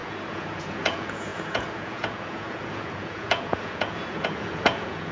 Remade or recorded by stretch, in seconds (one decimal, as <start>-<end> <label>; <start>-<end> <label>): 0.0-5.1 remade